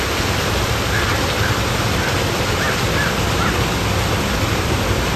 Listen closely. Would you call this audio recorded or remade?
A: recorded